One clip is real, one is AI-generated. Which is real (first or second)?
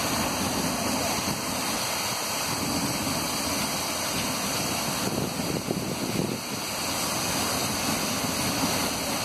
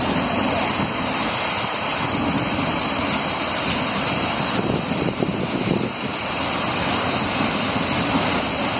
first